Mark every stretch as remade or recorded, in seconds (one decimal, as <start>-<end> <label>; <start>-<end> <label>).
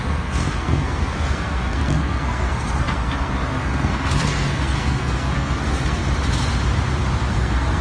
0.0-6.0 remade; 6.0-7.3 recorded; 7.3-7.8 remade